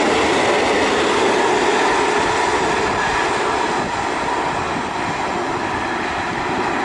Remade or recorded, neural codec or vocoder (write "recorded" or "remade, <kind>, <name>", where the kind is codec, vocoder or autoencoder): recorded